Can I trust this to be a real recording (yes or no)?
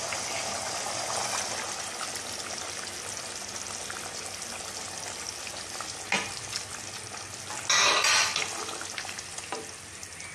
yes